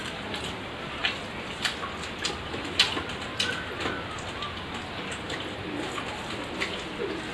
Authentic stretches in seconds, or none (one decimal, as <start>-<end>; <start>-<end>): 0.0-7.3